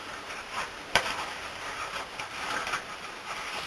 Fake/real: fake